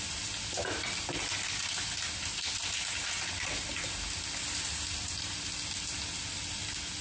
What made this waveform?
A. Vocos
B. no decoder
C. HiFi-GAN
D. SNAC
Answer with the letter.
B